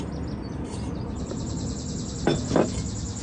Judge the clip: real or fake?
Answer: real